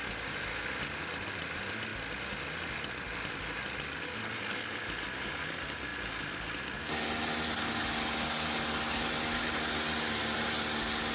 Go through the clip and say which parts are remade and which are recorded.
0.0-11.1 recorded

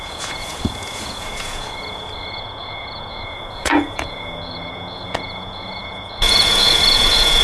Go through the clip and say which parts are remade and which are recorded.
0.0-7.4 remade

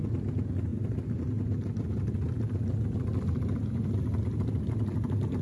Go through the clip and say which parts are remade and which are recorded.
0.0-5.4 recorded

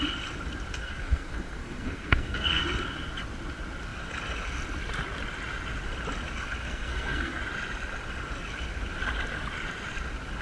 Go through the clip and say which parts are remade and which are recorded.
0.0-0.8 recorded; 0.8-2.6 remade; 2.6-6.6 recorded; 6.6-7.4 remade; 7.4-10.4 recorded